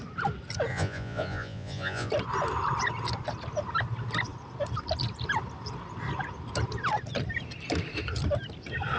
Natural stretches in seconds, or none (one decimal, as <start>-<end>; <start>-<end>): 0.0-0.7; 2.1-9.0